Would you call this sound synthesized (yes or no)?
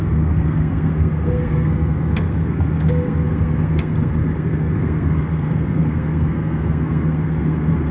yes